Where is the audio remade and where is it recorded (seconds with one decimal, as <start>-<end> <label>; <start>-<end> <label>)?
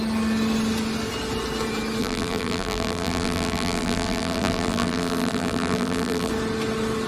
0.0-2.0 recorded; 2.0-6.3 remade; 6.3-7.1 recorded